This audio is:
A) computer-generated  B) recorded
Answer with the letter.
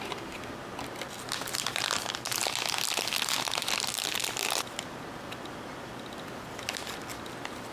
B